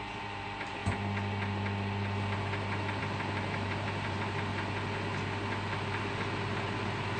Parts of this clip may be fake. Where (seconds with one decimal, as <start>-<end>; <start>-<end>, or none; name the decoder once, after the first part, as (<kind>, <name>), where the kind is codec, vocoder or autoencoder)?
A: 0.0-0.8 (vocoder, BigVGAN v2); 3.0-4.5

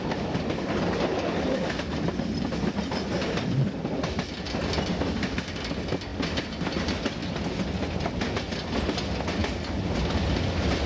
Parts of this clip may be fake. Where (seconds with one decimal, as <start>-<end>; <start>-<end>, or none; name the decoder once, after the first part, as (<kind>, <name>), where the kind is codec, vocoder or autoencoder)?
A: 6.1-6.8 (vocoder, BigVGAN v2); 7.2-8.8

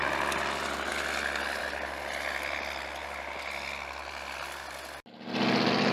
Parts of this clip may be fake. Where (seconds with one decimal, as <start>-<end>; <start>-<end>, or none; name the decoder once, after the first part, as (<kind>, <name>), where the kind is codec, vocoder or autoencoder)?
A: none

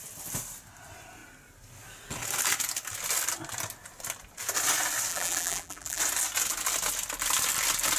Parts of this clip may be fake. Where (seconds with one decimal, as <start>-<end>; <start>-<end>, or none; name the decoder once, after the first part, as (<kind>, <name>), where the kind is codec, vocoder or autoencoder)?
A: 5.1-6.0 (vocoder, BigVGAN v2)

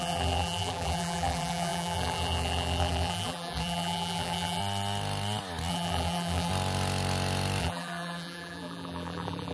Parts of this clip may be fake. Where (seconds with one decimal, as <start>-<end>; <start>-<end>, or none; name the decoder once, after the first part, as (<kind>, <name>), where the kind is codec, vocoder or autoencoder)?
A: 0.0-4.6 (vocoder, BigVGAN v2); 5.7-6.5; 7.6-9.5